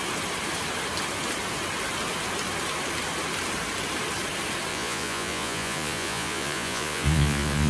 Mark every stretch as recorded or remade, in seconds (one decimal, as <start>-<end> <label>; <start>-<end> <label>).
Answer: 0.0-4.7 recorded; 4.7-7.7 remade